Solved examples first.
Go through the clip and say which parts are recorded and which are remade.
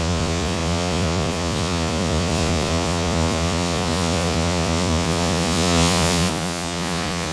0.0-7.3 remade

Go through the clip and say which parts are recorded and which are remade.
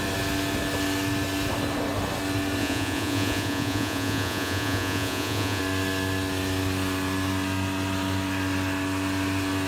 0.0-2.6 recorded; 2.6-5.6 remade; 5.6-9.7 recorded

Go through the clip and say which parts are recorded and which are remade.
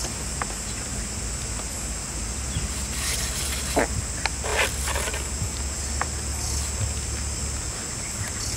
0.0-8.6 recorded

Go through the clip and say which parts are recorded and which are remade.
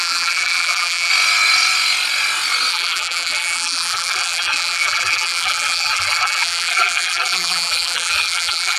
0.0-1.1 remade; 1.1-2.7 recorded; 2.7-8.8 remade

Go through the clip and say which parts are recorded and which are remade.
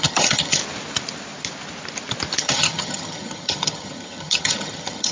0.0-0.6 remade; 0.6-2.4 recorded; 2.4-5.1 remade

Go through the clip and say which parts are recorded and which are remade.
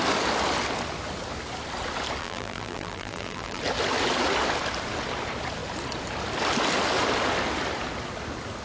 0.0-2.2 recorded; 2.2-3.6 remade; 3.6-8.6 recorded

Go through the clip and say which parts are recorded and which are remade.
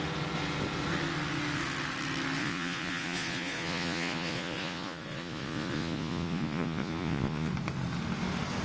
0.0-2.4 recorded; 2.4-7.5 remade; 7.5-8.6 recorded